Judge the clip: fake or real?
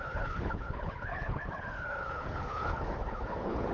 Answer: fake